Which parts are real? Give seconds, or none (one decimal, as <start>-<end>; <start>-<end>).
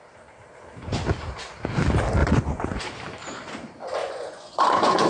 0.0-2.2; 2.8-4.0